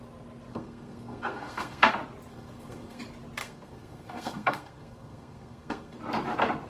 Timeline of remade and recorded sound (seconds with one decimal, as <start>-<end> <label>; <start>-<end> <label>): 0.0-0.5 recorded; 0.5-1.9 remade; 1.9-2.3 recorded; 2.3-3.0 remade; 3.0-3.4 recorded; 3.4-6.0 remade; 6.0-6.7 recorded